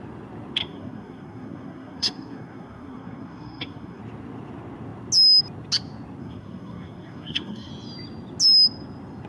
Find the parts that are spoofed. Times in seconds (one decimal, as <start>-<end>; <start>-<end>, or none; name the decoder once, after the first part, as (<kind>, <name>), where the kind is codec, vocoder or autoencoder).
0.6-4.0 (codec, SNAC); 6.2-7.7